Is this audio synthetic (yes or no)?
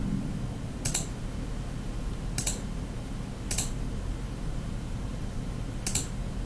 no